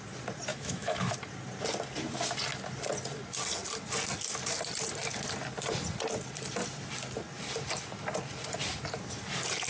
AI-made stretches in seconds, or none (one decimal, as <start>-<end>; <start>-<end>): 0.5-1.1